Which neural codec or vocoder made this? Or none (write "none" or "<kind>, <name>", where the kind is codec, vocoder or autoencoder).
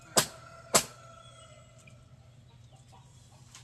none